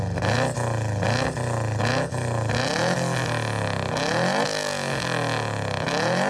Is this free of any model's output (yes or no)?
yes